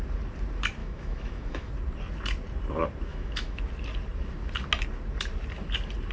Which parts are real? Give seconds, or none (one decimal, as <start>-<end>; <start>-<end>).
0.0-0.8; 1.7-3.1; 3.6-6.1